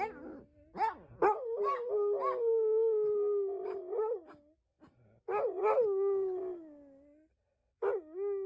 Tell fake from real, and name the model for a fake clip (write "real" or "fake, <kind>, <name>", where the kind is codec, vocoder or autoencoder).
real